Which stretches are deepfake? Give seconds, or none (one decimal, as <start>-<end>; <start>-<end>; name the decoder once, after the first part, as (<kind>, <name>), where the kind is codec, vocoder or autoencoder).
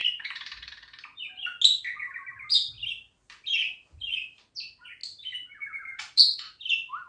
0.0-0.7 (vocoder, BigVGAN v2)